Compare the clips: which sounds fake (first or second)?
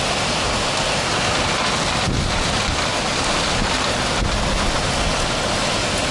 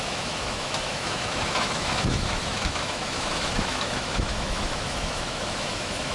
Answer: second